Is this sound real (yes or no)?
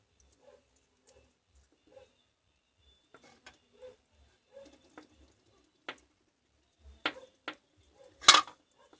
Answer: yes